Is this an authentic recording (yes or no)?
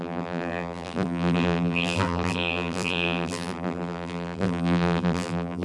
no